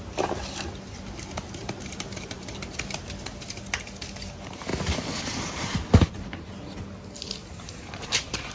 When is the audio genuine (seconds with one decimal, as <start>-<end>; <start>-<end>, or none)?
0.0-1.6; 2.6-7.4